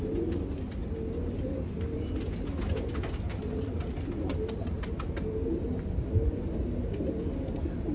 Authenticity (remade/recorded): recorded